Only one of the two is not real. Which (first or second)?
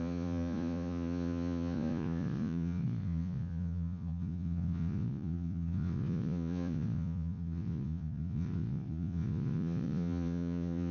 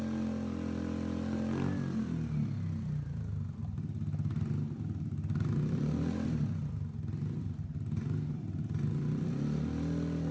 first